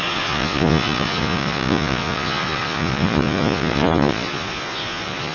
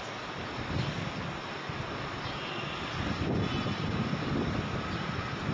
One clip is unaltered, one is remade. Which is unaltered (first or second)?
second